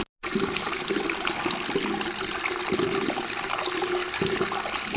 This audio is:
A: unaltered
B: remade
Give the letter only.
A